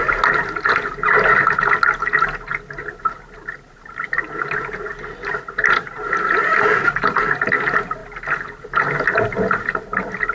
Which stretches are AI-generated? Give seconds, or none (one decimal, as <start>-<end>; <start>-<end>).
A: none